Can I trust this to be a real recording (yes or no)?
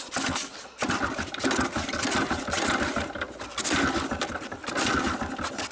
yes